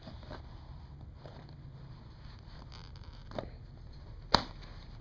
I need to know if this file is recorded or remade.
recorded